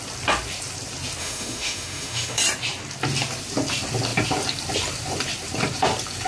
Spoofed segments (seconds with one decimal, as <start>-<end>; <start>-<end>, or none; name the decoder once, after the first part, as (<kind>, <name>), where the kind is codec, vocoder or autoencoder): 1.2-2.4 (autoencoder, DAC-VAE)